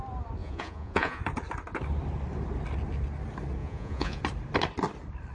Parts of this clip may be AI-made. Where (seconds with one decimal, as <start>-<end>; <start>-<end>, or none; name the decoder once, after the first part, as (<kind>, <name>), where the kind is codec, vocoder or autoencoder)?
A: 0.4-1.2 (vocoder, Vocos); 3.6-4.2